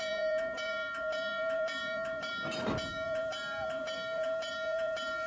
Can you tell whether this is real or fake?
fake